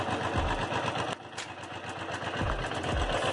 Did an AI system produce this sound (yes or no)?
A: no